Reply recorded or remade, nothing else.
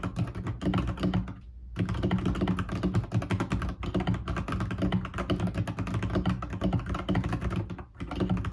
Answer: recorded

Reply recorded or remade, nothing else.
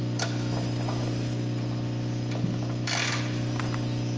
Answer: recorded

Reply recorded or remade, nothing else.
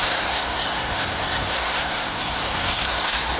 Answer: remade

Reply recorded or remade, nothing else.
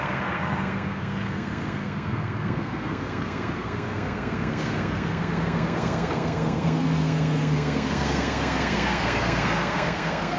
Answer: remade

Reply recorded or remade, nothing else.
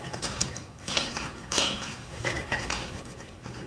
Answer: remade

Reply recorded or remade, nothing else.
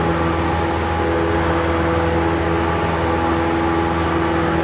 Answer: recorded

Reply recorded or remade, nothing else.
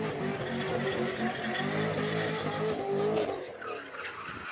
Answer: recorded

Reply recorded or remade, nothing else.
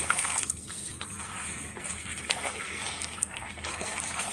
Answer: remade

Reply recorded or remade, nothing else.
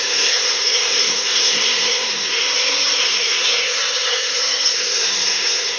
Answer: remade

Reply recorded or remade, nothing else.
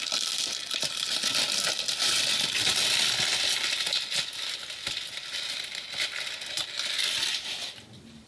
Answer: recorded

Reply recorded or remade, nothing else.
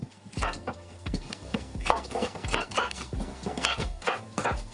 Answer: remade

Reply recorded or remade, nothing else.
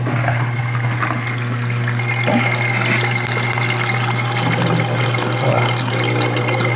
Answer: recorded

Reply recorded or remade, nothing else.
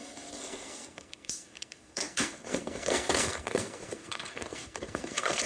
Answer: remade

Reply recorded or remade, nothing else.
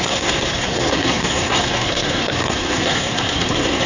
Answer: remade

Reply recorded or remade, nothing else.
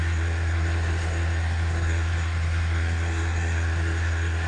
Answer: remade